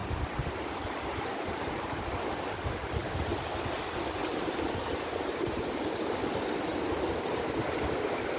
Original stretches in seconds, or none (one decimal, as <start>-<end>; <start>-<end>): 2.0-3.0; 3.8-4.2; 5.7-8.4